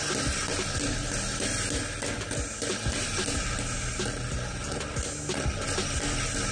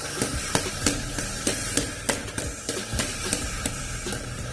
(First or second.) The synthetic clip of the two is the second